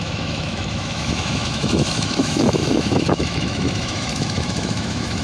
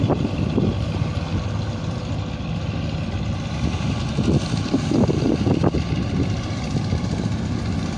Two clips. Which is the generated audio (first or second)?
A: first